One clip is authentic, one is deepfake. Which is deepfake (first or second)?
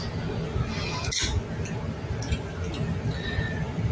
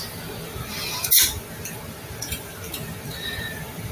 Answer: second